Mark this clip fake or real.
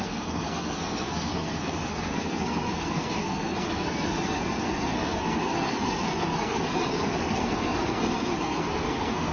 fake